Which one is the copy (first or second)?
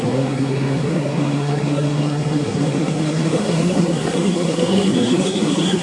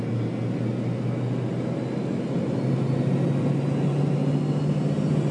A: first